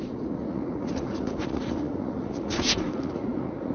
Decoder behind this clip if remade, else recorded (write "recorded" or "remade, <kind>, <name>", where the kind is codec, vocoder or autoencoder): remade, vocoder, Vocos